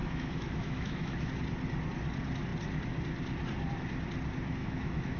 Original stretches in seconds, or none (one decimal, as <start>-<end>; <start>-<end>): 1.3-4.6